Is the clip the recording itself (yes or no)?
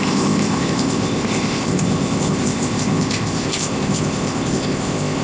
no